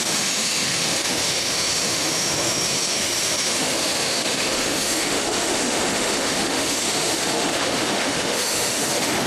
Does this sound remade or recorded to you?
remade